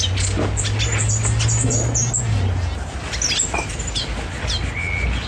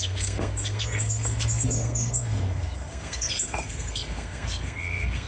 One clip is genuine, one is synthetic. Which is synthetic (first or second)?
second